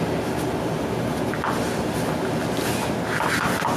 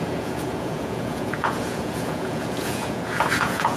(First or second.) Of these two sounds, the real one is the first